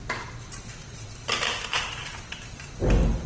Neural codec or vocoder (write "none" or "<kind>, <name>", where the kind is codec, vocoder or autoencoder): none